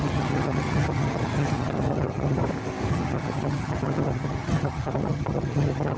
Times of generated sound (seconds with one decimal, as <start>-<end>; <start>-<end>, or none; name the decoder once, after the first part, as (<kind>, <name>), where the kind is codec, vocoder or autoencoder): 0.0-2.4 (vocoder, HiFi-GAN); 2.9-6.0